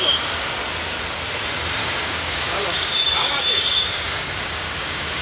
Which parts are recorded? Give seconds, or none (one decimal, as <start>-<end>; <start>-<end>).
0.0-1.8